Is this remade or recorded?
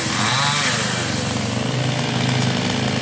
recorded